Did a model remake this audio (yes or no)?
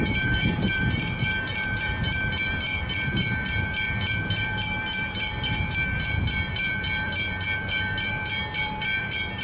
yes